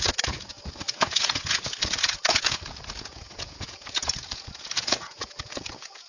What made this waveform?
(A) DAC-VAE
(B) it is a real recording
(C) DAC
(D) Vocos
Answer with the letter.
D